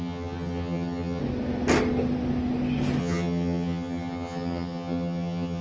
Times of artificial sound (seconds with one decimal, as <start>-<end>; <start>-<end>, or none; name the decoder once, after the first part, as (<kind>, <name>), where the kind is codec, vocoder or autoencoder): 0.0-1.2 (vocoder, HiFi-GAN); 3.0-5.6